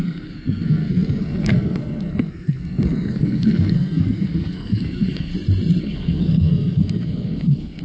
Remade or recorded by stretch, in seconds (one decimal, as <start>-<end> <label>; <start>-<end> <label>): 0.0-5.3 remade; 5.3-5.8 recorded; 5.8-7.8 remade